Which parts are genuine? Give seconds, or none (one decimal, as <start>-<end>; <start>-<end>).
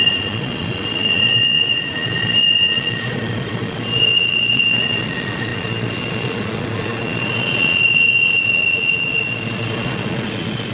none